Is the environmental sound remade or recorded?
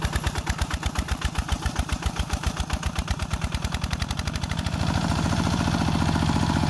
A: remade